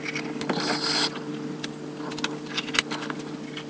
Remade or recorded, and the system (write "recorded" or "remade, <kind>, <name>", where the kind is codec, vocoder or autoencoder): recorded